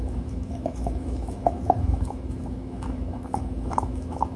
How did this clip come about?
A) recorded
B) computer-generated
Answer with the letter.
B